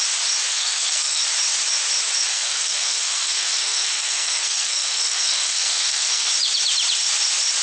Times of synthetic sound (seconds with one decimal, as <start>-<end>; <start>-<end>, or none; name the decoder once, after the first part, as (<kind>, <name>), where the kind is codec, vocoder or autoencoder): 0.5-1.2 (codec, SNAC); 2.3-6.3